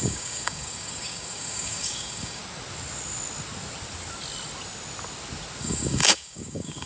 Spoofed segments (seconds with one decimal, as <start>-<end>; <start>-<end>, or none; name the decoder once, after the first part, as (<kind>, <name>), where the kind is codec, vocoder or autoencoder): 0.0-2.4 (codec, DAC); 5.6-6.9